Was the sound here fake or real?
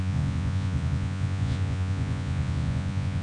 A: fake